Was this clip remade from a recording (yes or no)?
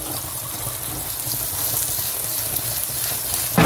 no